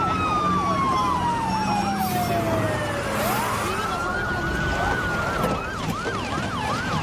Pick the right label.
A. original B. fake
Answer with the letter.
A